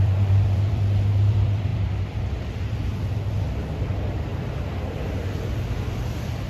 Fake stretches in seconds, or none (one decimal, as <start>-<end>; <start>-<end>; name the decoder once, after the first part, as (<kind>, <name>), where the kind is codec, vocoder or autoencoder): 0.0-4.3 (vocoder, BigVGAN v2); 5.5-6.5

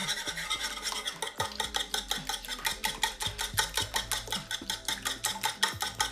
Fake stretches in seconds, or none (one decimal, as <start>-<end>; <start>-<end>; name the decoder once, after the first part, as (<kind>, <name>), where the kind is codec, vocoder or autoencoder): none

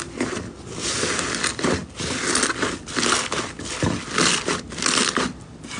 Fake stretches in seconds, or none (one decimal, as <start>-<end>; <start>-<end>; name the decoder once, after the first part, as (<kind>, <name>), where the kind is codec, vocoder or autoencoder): none

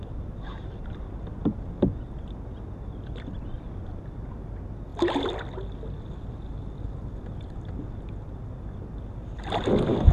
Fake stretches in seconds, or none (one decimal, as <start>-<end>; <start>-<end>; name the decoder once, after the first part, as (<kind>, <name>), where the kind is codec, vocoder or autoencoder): none